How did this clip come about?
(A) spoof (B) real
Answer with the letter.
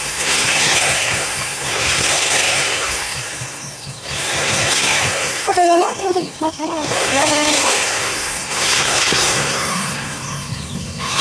A